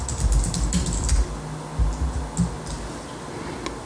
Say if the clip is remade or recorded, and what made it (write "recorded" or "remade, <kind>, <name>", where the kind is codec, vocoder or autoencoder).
recorded